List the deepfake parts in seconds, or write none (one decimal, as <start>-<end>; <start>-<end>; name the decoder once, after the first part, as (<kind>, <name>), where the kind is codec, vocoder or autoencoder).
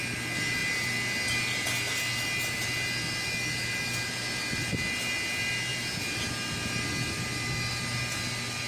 none